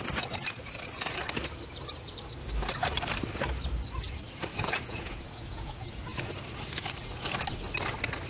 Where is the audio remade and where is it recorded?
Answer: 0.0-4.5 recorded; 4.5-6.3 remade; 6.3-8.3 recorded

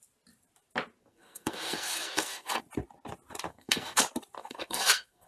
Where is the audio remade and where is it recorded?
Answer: 0.0-1.0 recorded; 1.0-2.6 remade; 2.6-3.5 recorded; 3.5-4.0 remade; 4.0-4.4 recorded; 4.4-5.3 remade

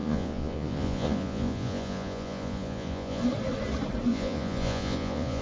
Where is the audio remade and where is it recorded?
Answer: 0.0-3.2 remade; 3.2-4.1 recorded; 4.1-5.4 remade

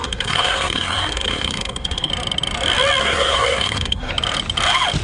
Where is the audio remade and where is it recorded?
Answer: 0.0-2.1 remade; 2.1-3.0 recorded; 3.0-4.1 remade; 4.1-5.0 recorded

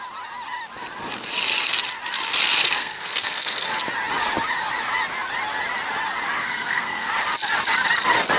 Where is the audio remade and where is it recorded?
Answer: 0.0-2.8 recorded; 2.8-3.7 remade; 3.7-6.4 recorded; 6.4-7.1 remade; 7.1-8.4 recorded

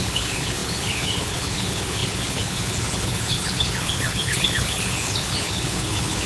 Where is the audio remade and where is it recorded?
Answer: 0.0-6.3 remade

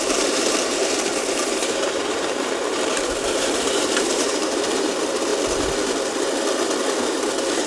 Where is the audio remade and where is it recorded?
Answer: 0.0-5.3 remade; 5.3-7.7 recorded